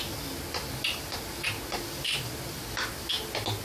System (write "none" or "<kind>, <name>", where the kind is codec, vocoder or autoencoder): none